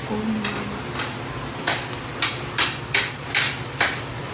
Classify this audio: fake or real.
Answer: real